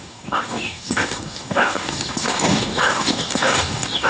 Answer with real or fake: fake